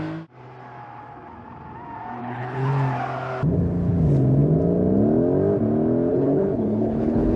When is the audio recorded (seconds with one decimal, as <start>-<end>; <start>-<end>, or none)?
0.0-2.2; 2.7-6.1